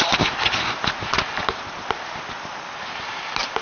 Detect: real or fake real